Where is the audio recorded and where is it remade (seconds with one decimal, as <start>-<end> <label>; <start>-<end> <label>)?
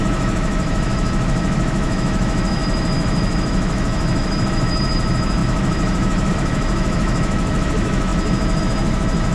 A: 0.0-9.3 remade